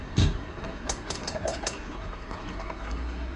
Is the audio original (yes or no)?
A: no